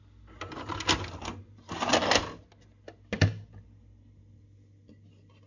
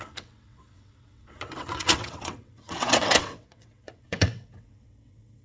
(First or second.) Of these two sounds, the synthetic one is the second